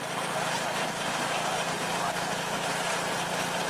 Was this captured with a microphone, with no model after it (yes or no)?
yes